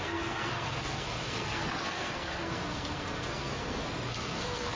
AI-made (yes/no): yes